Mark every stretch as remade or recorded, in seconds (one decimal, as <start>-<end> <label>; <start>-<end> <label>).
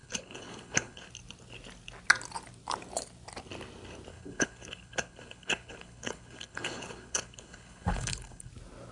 0.0-1.1 remade; 1.1-4.1 recorded; 4.1-8.5 remade; 8.5-8.9 recorded